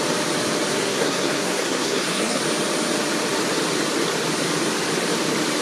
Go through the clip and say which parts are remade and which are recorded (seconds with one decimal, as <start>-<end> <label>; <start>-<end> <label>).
0.0-0.7 recorded; 0.7-2.4 remade; 2.4-5.6 recorded